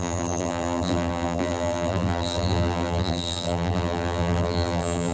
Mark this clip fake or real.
fake